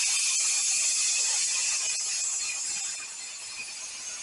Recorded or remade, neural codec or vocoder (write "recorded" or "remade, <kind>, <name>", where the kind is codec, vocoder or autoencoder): recorded